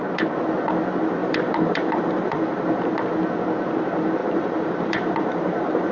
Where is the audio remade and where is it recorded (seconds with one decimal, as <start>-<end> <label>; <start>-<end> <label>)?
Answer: 0.0-1.2 recorded; 1.2-2.4 remade; 2.4-4.2 recorded; 4.2-5.9 remade